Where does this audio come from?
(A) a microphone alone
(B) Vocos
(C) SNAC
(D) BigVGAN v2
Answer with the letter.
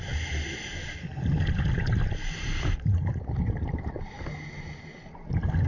A